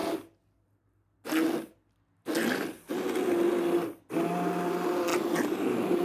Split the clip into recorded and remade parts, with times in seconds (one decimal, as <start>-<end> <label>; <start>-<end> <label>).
0.0-6.0 recorded